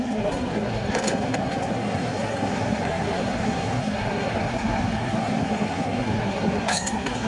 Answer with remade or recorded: remade